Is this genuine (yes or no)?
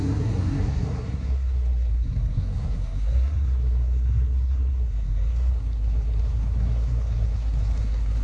no